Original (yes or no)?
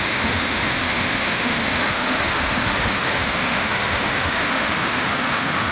no